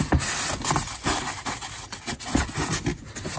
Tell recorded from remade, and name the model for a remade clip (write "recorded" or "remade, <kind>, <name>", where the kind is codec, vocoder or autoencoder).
recorded